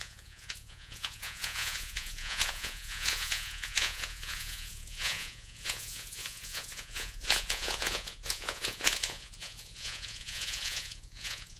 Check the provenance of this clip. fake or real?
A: fake